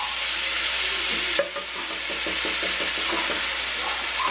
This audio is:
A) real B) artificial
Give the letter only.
A